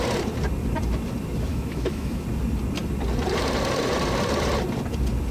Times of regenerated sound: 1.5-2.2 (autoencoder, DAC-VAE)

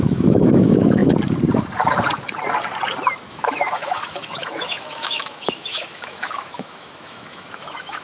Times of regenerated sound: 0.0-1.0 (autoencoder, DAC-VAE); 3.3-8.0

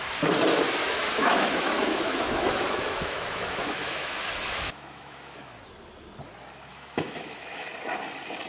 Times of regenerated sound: 0.8-5.6 (autoencoder, DAC-VAE); 6.7-7.7

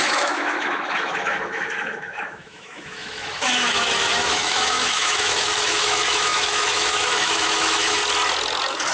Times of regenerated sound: 0.0-8.0 (autoencoder, DAC-VAE)

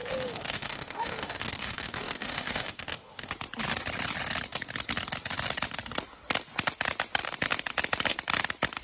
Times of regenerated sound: 0.0-3.3 (autoencoder, DAC-VAE)